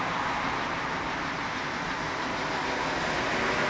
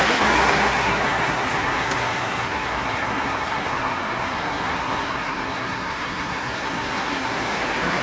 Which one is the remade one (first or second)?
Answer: second